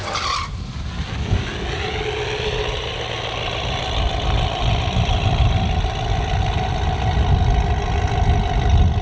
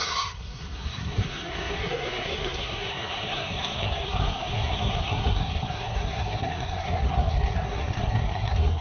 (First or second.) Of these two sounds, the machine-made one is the second